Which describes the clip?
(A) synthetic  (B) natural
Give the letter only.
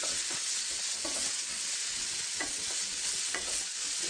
A